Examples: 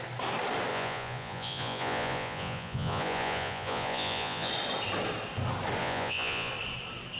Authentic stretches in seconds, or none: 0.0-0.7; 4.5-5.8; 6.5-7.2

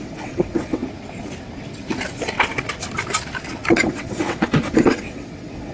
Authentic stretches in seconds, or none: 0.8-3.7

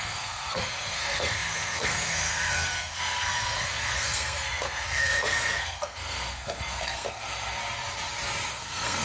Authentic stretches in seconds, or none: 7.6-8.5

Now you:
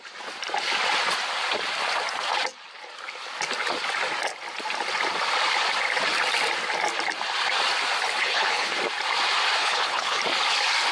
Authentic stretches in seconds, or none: 0.0-8.2; 8.8-9.6; 10.2-10.9

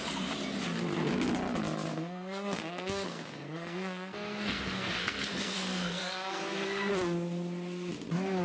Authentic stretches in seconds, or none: 0.0-1.9; 6.9-8.4

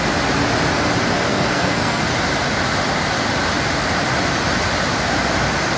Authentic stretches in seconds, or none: 0.0-1.3; 2.0-5.8

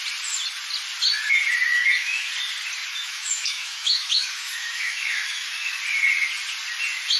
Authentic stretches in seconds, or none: 0.0-1.7; 2.3-2.8; 5.8-7.2

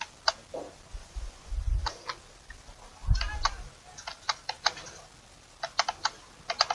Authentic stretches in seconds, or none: 0.0-0.9; 1.5-6.7